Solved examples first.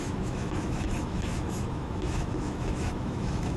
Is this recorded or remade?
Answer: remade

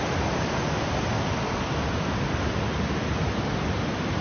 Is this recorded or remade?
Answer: recorded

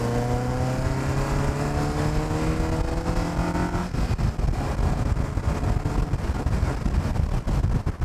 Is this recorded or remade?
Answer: recorded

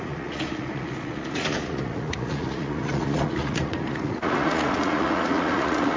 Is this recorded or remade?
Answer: remade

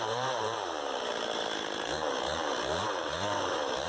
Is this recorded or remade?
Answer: remade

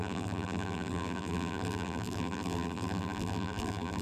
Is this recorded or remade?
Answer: remade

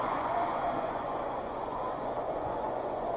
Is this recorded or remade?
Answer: remade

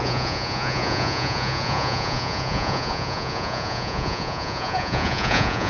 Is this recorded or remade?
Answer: remade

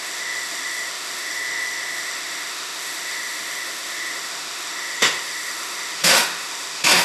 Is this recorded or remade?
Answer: remade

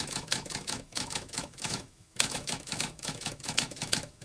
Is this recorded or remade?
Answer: remade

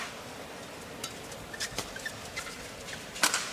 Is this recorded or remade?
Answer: recorded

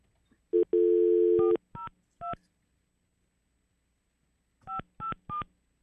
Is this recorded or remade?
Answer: recorded